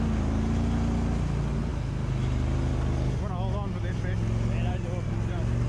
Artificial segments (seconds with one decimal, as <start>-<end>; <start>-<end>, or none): none